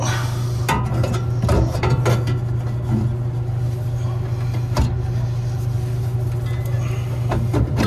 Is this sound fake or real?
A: real